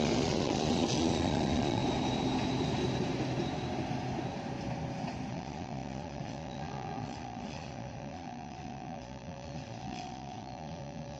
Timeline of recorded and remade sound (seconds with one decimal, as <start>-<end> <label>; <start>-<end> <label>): 0.0-1.8 remade; 1.8-5.3 recorded; 5.3-11.2 remade